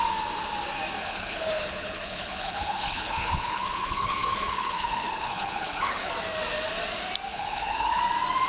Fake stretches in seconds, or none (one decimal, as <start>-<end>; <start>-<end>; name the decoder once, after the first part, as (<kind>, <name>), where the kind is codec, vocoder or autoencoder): 1.0-6.1 (codec, HILCodec); 7.3-8.0